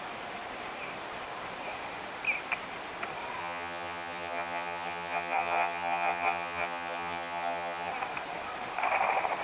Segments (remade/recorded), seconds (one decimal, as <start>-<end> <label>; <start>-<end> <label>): 0.0-3.4 recorded; 3.4-7.9 remade; 7.9-9.4 recorded